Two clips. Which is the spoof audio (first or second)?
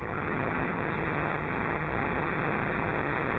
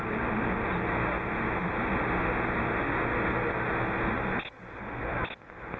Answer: first